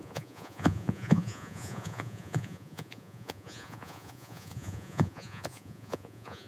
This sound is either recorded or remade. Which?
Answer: remade